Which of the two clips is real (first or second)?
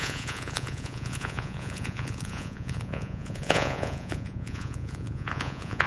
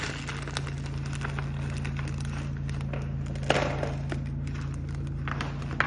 second